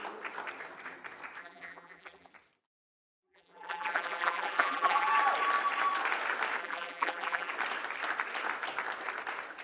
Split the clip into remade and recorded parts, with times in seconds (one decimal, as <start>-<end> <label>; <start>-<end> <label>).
0.0-1.4 recorded; 1.4-2.3 remade; 2.3-3.0 recorded; 3.0-5.1 remade; 5.1-6.6 recorded; 6.6-7.5 remade; 7.5-9.6 recorded